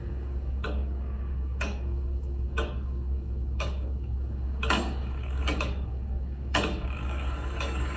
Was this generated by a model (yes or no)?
yes